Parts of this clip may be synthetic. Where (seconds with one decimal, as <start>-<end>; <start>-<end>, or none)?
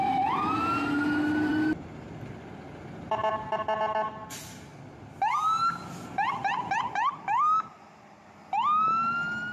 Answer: none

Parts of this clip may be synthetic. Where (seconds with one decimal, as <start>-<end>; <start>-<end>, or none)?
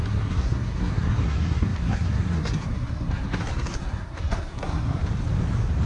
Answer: 0.0-5.0